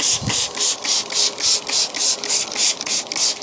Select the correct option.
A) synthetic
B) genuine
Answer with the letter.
B